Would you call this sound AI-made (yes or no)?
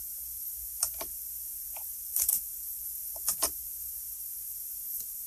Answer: yes